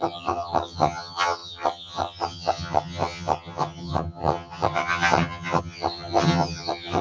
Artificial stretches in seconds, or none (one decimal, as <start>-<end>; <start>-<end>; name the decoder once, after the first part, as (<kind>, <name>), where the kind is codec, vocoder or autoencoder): 0.0-7.0 (vocoder, HiFi-GAN)